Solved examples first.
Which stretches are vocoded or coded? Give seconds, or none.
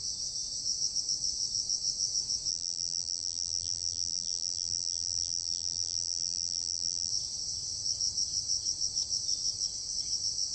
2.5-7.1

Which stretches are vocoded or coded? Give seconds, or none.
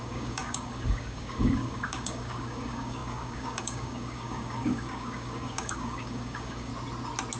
0.0-6.7